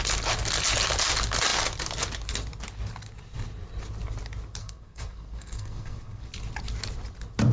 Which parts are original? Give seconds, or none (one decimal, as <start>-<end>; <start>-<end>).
0.0-4.6; 6.2-7.5